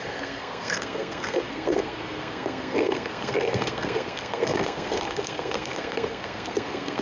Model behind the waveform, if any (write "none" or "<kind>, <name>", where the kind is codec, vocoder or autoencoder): codec, SNAC